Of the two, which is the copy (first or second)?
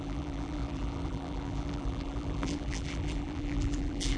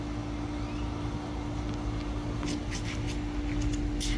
first